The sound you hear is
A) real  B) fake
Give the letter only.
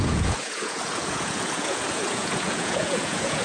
B